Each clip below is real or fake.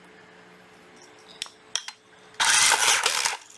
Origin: real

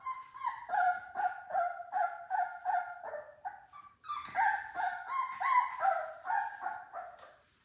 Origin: real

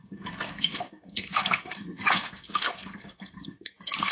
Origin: fake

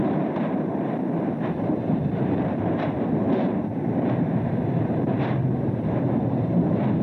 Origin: fake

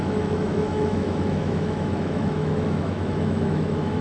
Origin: fake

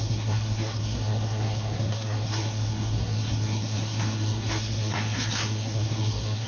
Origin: fake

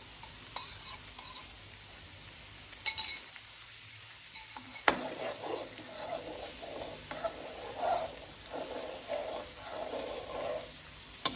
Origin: real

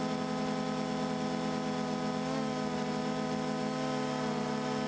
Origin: real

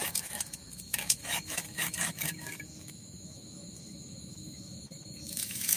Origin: fake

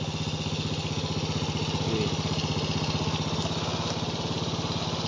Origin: real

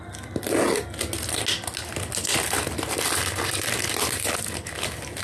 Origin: real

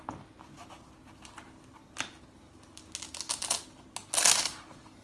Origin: real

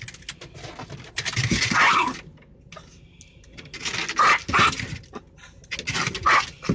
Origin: real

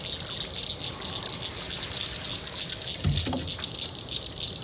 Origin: real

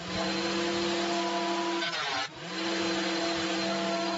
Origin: real